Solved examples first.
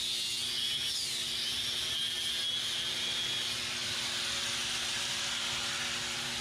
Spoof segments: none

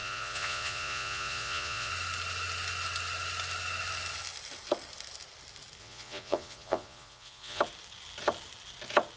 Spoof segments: 0.0-1.9 (vocoder, Vocos); 5.8-7.6

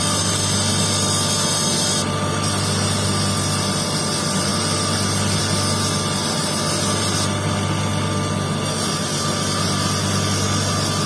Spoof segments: none

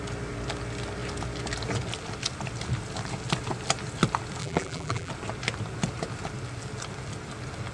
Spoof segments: 4.4-5.1 (vocoder, BigVGAN v2)

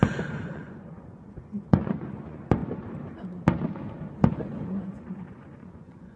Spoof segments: 0.0-2.6 (vocoder, Vocos); 4.1-6.2

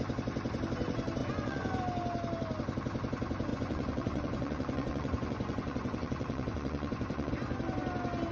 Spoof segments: 1.2-1.8 (vocoder, Vocos); 3.5-7.3

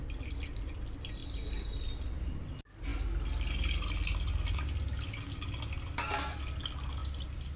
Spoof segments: none

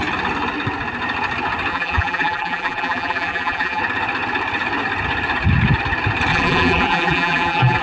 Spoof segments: 1.7-3.8 (vocoder, BigVGAN v2); 6.3-7.8